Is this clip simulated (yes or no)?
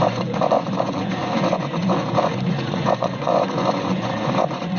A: yes